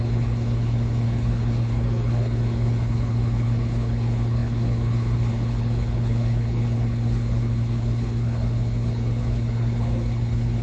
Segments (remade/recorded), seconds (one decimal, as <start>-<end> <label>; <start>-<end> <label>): 0.0-10.6 remade